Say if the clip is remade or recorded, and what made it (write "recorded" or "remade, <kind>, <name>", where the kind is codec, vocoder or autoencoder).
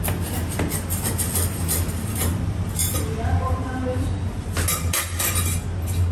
recorded